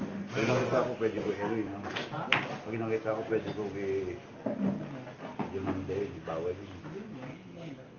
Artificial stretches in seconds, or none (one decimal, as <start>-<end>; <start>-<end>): 7.3-8.0